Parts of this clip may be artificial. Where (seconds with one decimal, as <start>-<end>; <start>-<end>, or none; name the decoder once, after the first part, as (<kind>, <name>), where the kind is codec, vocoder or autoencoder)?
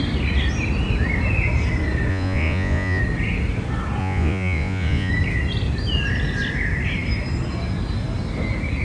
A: 2.1-3.0 (vocoder, Vocos); 4.0-5.1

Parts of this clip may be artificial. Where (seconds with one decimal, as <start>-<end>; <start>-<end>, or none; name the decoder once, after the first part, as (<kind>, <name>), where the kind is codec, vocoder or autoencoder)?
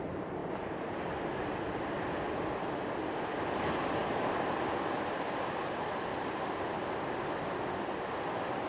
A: none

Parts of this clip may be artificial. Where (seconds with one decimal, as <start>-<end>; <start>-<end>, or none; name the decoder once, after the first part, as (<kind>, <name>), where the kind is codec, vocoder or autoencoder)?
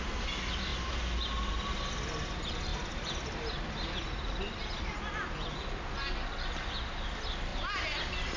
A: none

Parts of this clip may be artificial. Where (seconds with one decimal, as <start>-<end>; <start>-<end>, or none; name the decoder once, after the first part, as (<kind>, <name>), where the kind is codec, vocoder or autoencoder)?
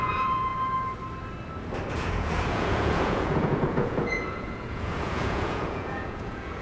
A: 0.0-0.5 (vocoder, Vocos); 1.9-6.6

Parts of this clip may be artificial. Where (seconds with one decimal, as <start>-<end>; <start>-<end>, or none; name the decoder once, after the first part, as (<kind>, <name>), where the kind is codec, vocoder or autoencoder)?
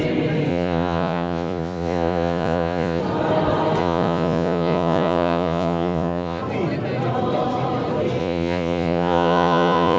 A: 0.5-3.0 (vocoder, Vocos); 3.8-6.4; 8.2-10.0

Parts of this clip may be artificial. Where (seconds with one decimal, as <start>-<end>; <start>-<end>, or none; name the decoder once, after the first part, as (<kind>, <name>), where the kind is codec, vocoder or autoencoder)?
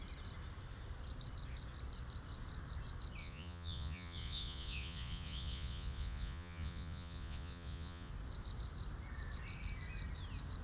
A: 3.2-8.1 (vocoder, Vocos)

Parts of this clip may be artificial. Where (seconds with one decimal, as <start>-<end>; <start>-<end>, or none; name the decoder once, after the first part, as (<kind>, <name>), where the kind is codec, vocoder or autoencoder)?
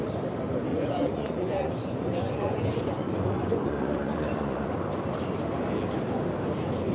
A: 0.7-4.7 (vocoder, Vocos)